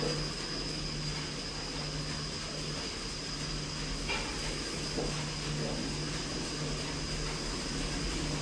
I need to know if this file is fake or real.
real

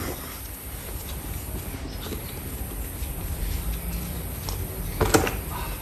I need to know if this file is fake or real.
real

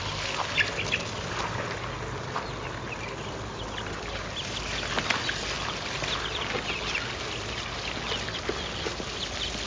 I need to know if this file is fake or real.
real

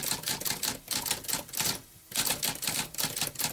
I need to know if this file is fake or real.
real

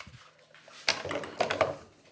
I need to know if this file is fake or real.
real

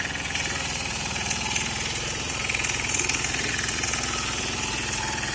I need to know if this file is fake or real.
fake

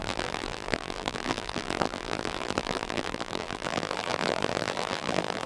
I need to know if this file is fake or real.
fake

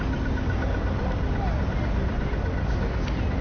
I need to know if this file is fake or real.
real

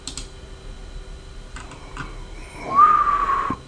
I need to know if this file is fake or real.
real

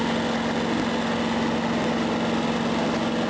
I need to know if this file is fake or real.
real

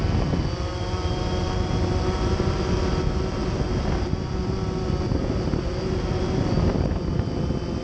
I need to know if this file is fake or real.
real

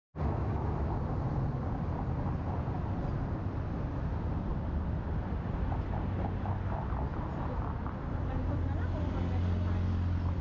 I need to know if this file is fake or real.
real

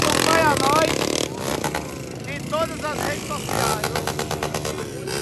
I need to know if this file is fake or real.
real